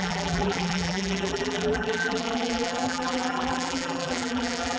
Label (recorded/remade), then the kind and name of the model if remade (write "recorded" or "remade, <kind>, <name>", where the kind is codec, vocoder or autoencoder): remade, vocoder, BigVGAN v2